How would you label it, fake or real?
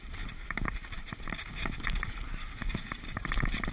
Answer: fake